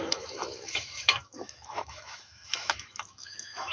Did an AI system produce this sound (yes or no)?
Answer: yes